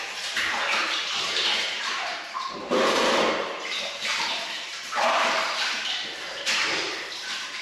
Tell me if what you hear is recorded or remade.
remade